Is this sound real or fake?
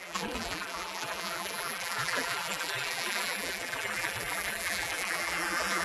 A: fake